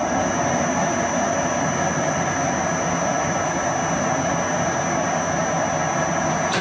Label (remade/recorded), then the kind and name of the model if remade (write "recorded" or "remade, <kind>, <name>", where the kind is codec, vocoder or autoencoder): recorded